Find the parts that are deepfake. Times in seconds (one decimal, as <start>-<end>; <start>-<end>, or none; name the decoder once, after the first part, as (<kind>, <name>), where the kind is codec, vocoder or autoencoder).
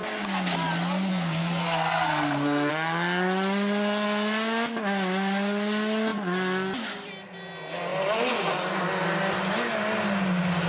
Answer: 1.1-2.7 (codec, SNAC)